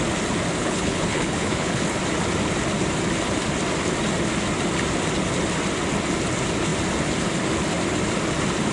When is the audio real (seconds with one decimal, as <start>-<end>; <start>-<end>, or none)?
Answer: 0.0-0.6; 1.8-8.7